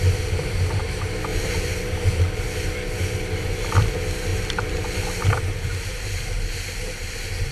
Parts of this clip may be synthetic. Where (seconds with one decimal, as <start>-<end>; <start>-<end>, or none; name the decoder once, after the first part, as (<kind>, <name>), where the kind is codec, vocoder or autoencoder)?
1.3-2.2 (vocoder, BigVGAN v2); 4.3-6.2